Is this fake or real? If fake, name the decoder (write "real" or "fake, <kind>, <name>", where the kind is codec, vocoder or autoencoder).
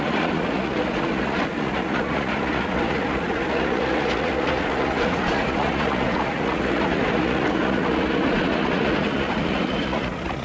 fake, vocoder, Vocos